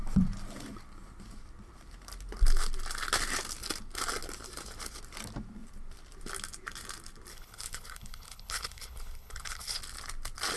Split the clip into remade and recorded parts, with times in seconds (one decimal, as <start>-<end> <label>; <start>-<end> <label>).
0.0-7.3 recorded; 7.3-9.8 remade; 9.8-10.6 recorded